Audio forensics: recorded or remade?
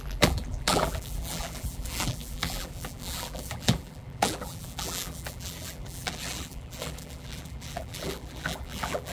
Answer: remade